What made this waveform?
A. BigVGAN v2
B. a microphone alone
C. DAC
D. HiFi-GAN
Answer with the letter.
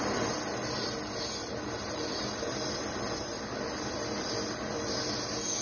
B